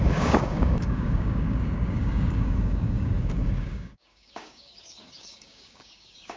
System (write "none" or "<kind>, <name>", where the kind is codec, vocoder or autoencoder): codec, DAC